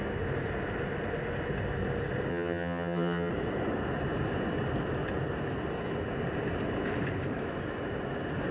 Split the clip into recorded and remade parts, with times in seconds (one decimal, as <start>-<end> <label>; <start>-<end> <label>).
0.0-2.3 recorded; 2.3-3.3 remade; 3.3-8.5 recorded